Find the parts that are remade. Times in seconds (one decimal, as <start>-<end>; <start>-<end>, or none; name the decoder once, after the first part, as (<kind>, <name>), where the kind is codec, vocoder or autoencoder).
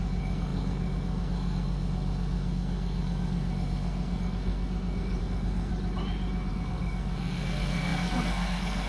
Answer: 0.0-5.7 (codec, SNAC); 6.5-8.9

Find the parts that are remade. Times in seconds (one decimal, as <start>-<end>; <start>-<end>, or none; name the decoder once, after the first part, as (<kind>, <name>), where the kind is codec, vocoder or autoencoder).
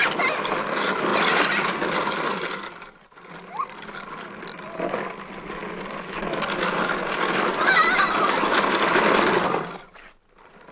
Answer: none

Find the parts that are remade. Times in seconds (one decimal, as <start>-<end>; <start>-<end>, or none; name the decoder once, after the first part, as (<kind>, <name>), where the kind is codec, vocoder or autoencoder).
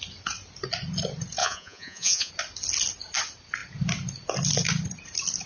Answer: 1.4-2.3 (vocoder, Vocos)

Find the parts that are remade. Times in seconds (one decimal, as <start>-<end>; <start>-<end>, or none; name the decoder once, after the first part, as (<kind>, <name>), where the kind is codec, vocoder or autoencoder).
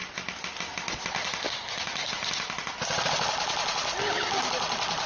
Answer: 4.0-4.5 (codec, DAC)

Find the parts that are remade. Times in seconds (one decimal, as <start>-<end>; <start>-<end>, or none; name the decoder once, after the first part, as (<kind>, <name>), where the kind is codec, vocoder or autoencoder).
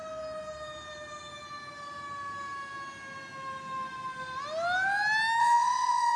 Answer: 5.4-6.2 (vocoder, WaveNeXt)